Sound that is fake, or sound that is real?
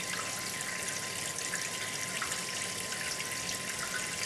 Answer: real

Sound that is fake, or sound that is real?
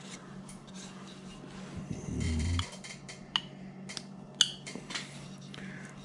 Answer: real